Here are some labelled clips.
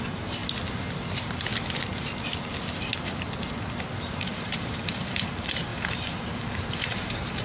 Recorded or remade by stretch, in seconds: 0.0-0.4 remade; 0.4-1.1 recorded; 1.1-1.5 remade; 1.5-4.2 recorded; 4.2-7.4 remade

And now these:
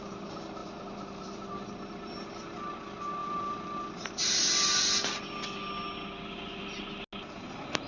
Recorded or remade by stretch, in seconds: 0.0-0.6 recorded; 0.6-2.1 remade; 2.1-3.2 recorded; 3.2-4.3 remade; 4.3-7.9 recorded

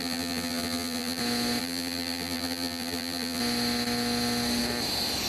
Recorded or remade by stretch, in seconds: 0.0-1.2 remade; 1.2-1.6 recorded; 1.6-3.4 remade; 3.4-5.3 recorded

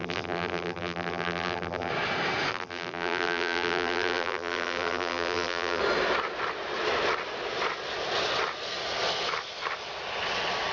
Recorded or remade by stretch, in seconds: 0.0-1.9 remade; 1.9-2.5 recorded; 2.5-5.8 remade; 5.8-10.7 recorded

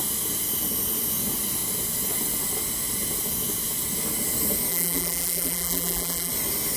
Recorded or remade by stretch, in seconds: 0.0-4.7 recorded; 4.7-6.3 remade; 6.3-6.8 recorded